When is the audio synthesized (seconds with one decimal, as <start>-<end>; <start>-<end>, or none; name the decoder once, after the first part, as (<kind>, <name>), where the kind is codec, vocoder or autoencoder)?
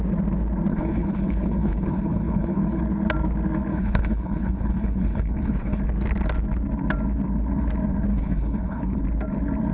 0.7-2.8 (codec, HILCodec); 3.7-5.8; 8.1-9.0